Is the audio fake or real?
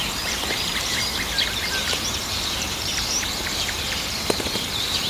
fake